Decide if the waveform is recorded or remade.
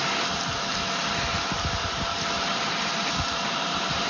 remade